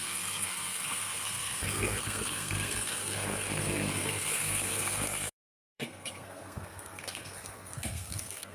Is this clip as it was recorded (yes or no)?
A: no